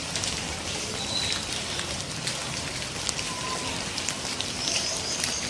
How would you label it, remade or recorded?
recorded